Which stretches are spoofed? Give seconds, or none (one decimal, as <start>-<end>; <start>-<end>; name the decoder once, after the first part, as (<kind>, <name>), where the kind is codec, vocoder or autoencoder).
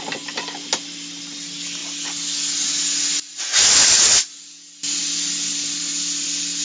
none